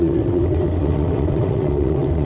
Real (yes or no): no